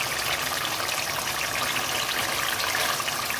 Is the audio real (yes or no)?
yes